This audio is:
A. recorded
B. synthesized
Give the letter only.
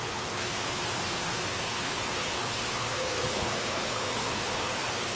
B